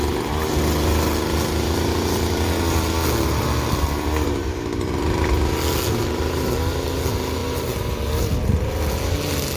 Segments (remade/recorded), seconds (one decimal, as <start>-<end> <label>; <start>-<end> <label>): 0.0-9.6 recorded